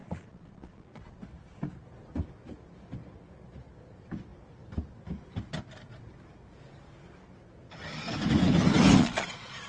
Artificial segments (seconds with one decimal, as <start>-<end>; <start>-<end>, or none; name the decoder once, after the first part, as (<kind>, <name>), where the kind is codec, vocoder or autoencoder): 0.0-1.2 (vocoder, Vocos); 9.0-9.7

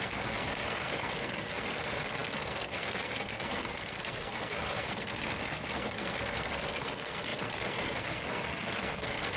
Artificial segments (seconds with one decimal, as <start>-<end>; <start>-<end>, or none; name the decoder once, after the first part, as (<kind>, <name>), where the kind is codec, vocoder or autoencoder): 0.0-9.4 (codec, SNAC)